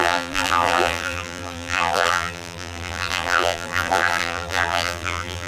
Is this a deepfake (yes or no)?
yes